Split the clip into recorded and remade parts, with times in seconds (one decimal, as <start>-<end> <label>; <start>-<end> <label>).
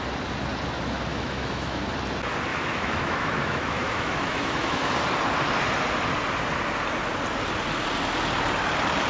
0.0-1.1 recorded; 1.1-1.8 remade; 1.8-2.5 recorded; 2.5-4.9 remade; 4.9-9.1 recorded